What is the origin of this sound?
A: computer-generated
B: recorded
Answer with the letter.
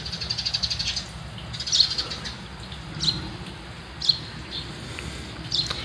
B